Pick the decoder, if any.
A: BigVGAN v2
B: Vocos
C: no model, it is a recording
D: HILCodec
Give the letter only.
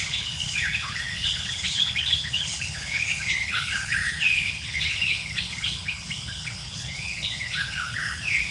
D